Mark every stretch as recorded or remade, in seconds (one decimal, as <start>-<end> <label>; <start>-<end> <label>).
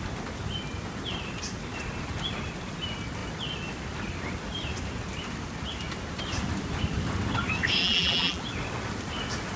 0.0-7.8 recorded; 7.8-8.4 remade; 8.4-9.6 recorded